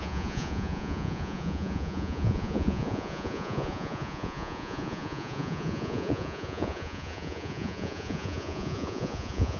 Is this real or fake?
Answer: fake